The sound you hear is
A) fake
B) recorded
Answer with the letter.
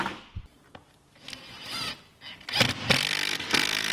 B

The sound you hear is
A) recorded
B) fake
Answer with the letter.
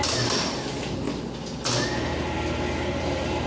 A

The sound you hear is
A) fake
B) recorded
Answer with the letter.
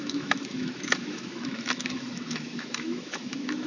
A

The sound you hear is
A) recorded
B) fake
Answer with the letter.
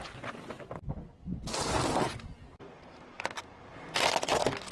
A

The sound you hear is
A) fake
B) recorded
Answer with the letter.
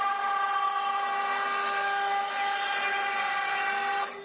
B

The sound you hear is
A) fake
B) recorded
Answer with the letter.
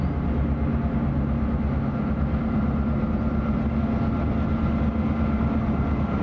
B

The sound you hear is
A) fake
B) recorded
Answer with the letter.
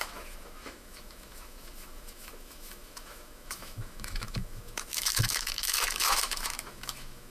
A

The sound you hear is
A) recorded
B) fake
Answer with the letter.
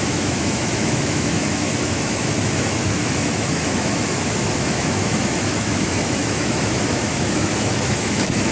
B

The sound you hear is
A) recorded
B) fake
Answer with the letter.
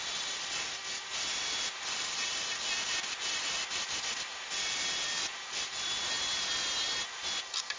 A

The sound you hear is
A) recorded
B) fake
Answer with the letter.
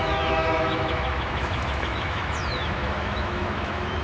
B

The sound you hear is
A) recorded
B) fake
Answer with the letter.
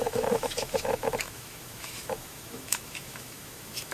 B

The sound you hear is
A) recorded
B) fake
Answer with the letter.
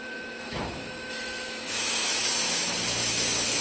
B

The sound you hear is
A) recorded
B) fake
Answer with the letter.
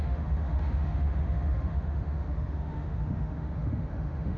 B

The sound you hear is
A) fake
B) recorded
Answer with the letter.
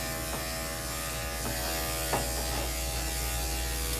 B